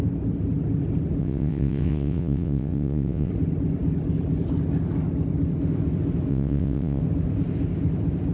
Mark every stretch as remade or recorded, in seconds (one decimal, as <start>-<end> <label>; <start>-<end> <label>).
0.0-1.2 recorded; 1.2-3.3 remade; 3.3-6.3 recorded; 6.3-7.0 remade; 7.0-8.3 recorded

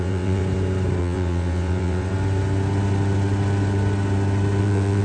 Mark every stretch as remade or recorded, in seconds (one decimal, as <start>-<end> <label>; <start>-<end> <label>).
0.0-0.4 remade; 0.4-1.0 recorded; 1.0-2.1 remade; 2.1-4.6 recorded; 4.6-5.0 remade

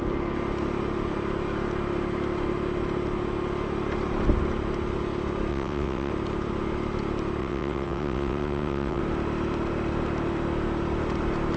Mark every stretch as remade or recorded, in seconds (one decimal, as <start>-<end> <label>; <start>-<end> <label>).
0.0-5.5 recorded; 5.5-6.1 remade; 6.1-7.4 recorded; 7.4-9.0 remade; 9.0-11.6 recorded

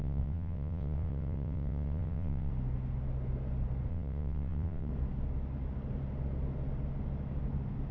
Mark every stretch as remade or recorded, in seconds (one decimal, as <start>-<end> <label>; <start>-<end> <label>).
0.0-2.5 remade; 2.5-3.9 recorded; 3.9-4.9 remade; 4.9-7.9 recorded